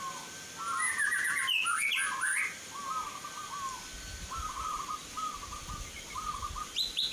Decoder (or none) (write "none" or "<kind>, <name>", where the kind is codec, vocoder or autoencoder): none